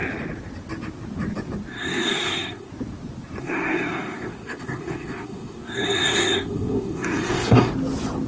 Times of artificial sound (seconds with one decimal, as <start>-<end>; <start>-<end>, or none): 1.7-2.7; 3.4-7.7